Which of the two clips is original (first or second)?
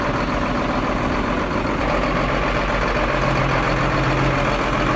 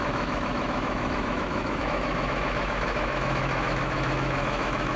first